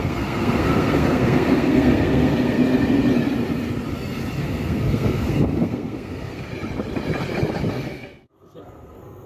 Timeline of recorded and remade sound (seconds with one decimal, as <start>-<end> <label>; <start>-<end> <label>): 0.0-2.6 remade; 2.6-4.4 recorded; 4.4-6.5 remade; 6.5-7.7 recorded; 7.7-9.3 remade